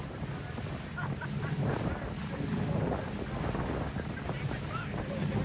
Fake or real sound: real